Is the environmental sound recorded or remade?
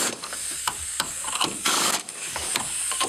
remade